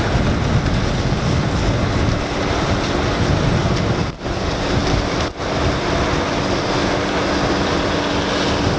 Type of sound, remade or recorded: recorded